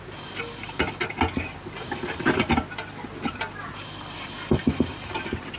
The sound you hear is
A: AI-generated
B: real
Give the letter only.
B